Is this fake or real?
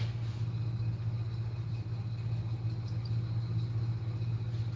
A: real